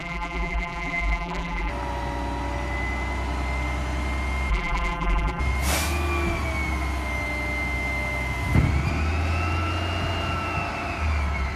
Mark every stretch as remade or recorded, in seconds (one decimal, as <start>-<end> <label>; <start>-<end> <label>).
0.0-1.7 remade; 1.7-4.5 recorded; 4.5-5.4 remade; 5.4-11.6 recorded